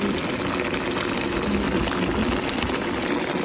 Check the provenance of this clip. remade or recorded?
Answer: recorded